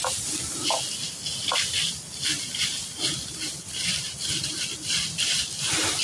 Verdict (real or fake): real